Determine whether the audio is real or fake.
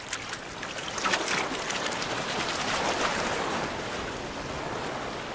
real